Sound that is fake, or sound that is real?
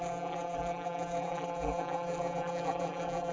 fake